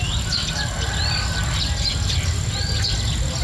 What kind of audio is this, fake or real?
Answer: real